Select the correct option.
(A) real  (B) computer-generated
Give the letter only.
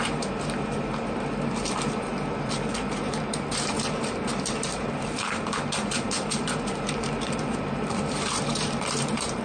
B